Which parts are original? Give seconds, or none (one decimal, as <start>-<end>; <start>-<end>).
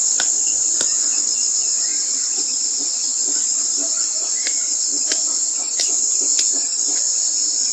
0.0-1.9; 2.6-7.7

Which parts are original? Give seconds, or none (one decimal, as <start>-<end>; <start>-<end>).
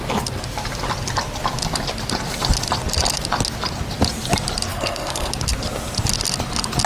0.0-4.7; 5.3-6.9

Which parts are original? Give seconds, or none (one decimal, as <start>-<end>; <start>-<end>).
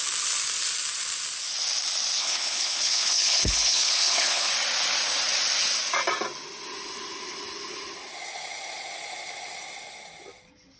0.0-2.2; 4.5-10.8